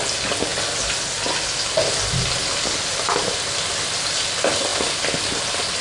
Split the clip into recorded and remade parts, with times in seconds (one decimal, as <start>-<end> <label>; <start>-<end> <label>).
0.0-5.8 recorded